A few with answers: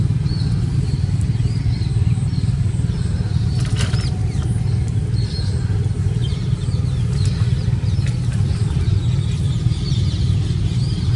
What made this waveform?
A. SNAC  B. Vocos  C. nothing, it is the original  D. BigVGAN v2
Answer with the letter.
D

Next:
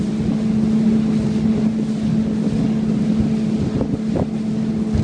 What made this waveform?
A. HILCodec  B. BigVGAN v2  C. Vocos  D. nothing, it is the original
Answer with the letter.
D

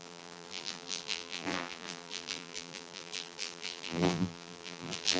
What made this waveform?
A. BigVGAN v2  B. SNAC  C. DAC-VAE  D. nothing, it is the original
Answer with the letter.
A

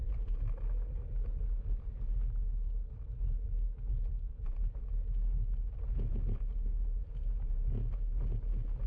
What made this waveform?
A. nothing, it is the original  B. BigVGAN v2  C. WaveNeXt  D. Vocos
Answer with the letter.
A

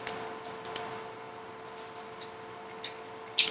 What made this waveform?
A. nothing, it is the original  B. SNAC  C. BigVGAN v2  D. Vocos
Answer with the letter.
A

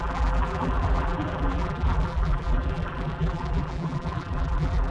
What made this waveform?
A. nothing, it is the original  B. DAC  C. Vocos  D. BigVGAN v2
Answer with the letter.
D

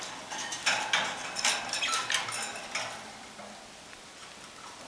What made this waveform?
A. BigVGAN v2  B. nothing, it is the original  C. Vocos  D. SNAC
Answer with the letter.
B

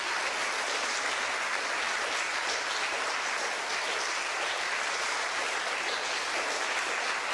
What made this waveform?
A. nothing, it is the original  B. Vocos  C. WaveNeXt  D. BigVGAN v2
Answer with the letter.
A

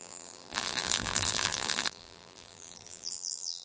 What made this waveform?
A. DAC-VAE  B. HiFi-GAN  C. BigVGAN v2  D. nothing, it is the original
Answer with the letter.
C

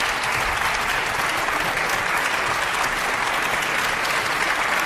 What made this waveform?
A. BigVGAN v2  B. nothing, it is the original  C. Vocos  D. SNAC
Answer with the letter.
B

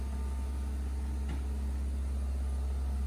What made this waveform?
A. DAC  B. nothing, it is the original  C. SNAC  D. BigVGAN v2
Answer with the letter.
B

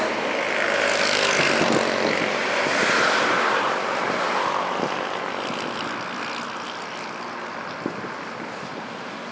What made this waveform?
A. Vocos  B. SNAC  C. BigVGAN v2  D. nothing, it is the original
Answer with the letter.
C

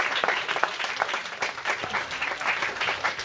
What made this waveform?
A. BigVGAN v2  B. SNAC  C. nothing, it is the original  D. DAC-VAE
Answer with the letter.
A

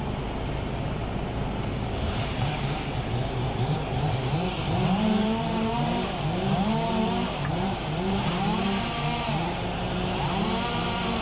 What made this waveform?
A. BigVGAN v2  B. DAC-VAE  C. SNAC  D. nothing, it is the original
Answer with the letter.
A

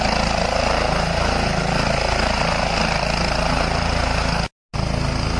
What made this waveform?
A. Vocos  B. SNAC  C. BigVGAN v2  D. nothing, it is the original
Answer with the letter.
D